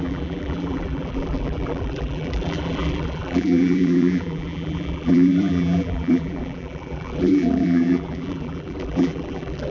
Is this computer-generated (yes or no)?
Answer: yes